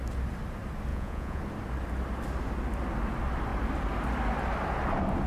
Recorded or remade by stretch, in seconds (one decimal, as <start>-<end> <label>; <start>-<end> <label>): 0.0-0.9 recorded; 0.9-1.4 remade; 1.4-5.3 recorded